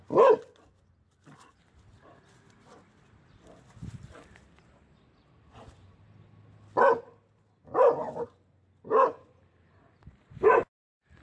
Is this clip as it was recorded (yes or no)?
yes